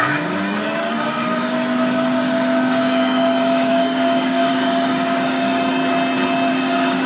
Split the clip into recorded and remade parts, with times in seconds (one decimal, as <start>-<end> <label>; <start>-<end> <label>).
0.0-5.8 remade; 5.8-6.5 recorded; 6.5-7.1 remade